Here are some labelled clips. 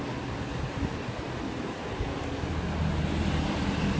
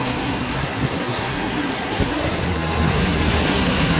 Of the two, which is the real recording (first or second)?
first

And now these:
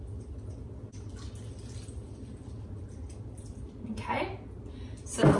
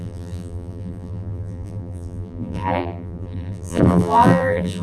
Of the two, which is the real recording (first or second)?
first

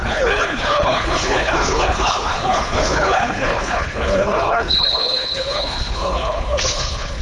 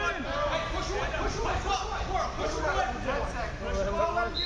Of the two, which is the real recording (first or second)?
second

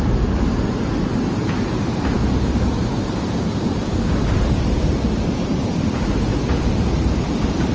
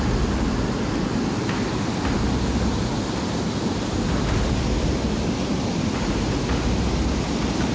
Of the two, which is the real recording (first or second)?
second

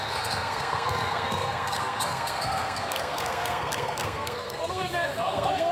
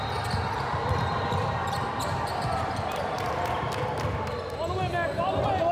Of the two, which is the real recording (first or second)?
second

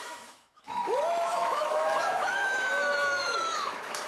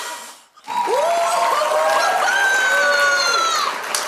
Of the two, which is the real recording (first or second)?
second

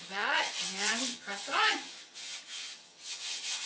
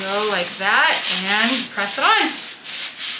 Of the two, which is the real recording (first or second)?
second